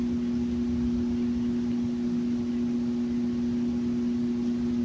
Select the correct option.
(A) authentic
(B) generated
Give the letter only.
A